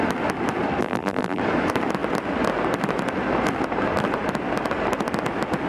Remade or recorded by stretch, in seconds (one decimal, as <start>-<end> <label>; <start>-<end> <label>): 0.0-0.8 recorded; 0.8-1.4 remade; 1.4-5.7 recorded

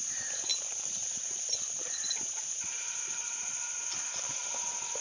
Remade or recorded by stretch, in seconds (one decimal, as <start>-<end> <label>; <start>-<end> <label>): 0.0-0.5 recorded; 0.5-3.5 remade; 3.5-5.0 recorded

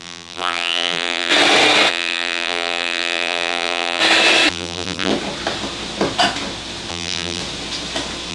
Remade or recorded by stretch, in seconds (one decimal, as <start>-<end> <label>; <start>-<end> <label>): 0.0-1.3 remade; 1.3-1.9 recorded; 1.9-4.0 remade; 4.0-4.5 recorded; 4.5-5.1 remade; 5.1-6.9 recorded; 6.9-7.4 remade; 7.4-8.3 recorded

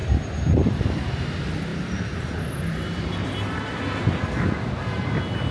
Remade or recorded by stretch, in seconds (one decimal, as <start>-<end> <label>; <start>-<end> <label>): 0.0-1.7 recorded; 1.7-3.8 remade; 3.8-5.5 recorded

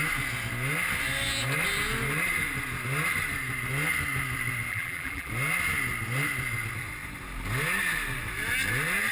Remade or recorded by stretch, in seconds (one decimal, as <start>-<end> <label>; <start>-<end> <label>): 0.0-4.7 recorded; 4.7-5.3 remade; 5.3-9.1 recorded

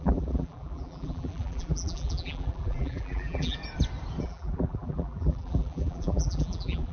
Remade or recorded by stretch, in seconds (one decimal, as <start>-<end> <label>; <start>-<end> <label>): 0.0-3.6 remade; 3.6-4.2 recorded; 4.2-6.9 remade

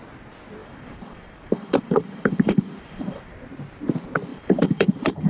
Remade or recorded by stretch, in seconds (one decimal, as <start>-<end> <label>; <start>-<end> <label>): 0.0-0.6 recorded; 0.6-3.3 remade; 3.3-4.3 recorded; 4.3-5.3 remade

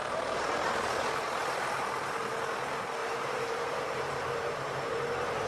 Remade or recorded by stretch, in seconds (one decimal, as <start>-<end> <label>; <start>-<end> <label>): 0.0-1.4 recorded; 1.4-2.3 remade; 2.3-3.0 recorded; 3.0-5.5 remade